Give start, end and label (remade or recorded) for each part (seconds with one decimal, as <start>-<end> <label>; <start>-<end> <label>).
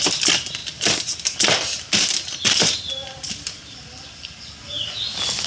0.0-5.5 recorded